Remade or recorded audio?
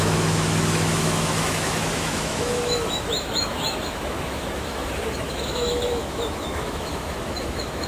remade